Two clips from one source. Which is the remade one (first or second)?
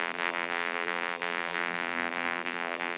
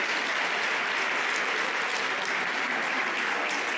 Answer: first